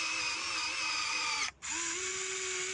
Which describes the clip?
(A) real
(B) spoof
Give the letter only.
A